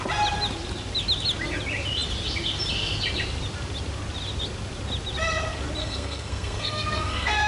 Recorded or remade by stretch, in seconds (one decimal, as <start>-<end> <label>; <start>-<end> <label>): 0.0-5.8 recorded; 5.8-7.5 remade